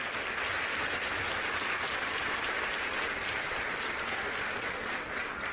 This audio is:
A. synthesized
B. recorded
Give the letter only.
B